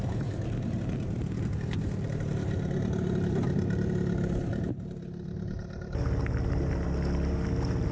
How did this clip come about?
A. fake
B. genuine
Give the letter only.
B